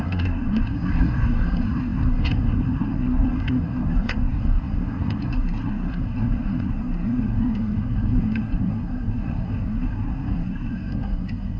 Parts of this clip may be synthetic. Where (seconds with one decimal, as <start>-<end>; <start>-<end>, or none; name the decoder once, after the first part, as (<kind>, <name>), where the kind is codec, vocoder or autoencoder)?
0.0-11.6 (codec, SNAC)